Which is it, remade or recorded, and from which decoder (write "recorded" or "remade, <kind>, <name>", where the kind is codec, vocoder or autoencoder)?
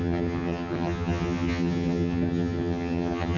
remade, vocoder, HiFi-GAN